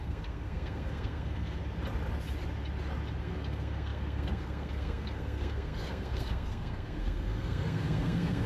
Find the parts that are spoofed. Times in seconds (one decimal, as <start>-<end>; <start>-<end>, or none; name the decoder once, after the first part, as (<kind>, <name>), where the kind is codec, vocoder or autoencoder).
0.0-1.6 (codec, SNAC); 3.2-8.5